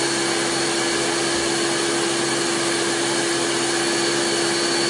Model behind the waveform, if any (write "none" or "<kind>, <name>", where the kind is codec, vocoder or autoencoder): none